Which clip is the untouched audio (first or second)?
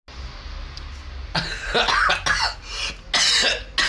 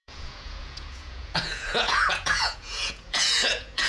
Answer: first